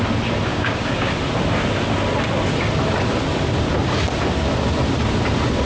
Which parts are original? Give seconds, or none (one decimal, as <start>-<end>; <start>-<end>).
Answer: 0.0-0.5; 1.1-5.7